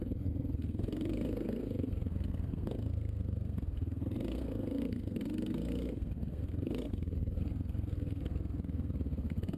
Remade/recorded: remade